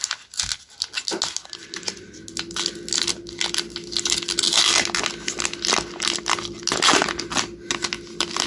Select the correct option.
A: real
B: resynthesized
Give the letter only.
A